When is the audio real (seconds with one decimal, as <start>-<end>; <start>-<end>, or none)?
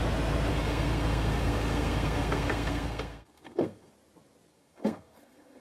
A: 0.0-0.5; 3.9-4.5